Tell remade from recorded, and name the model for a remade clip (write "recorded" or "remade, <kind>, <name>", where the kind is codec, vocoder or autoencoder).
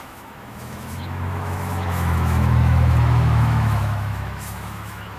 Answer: remade, autoencoder, DAC-VAE